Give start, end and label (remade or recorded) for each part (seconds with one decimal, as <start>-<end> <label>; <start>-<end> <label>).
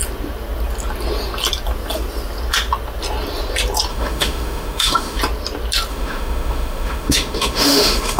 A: 0.0-3.9 recorded; 3.9-5.2 remade; 5.2-5.9 recorded; 5.9-8.2 remade